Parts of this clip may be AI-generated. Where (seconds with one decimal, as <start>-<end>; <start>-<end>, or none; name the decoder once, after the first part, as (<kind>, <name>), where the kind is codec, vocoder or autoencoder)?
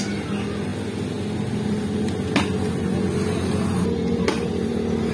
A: none